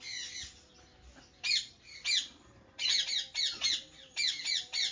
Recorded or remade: recorded